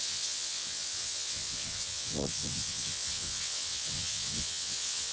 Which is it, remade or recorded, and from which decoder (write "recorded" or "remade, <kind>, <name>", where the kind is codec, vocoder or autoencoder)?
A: remade, vocoder, WaveNeXt